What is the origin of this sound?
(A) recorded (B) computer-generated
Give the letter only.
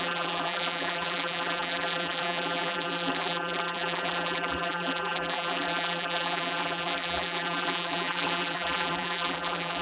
B